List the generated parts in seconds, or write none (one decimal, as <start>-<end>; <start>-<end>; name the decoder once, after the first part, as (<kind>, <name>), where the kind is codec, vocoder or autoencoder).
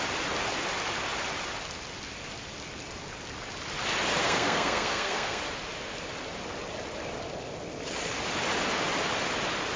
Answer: 4.2-5.4 (codec, SNAC)